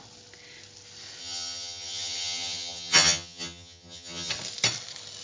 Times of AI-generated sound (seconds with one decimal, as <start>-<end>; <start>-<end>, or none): 1.2-4.3